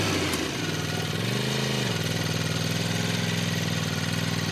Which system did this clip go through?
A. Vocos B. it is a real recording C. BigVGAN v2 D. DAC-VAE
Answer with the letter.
B